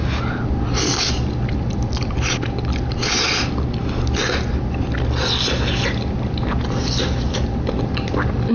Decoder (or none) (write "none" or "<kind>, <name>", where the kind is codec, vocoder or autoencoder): none